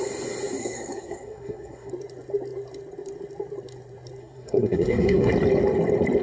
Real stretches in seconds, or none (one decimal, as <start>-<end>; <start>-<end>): 0.0-0.6; 1.9-4.2; 5.3-6.2